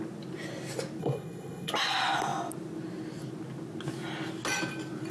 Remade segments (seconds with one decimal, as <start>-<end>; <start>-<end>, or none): 1.0-1.7